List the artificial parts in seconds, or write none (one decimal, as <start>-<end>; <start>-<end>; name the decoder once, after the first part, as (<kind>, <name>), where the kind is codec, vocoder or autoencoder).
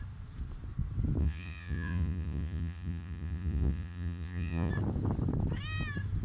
1.2-4.7 (vocoder, Vocos)